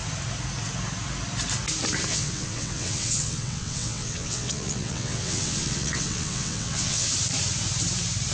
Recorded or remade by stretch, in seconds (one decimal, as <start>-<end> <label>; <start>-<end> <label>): 0.0-2.1 recorded; 2.1-7.1 remade; 7.1-8.3 recorded